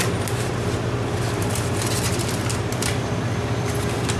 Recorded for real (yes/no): yes